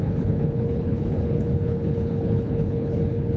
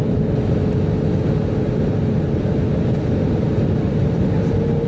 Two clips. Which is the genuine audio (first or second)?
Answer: second